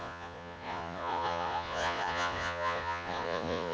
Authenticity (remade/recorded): remade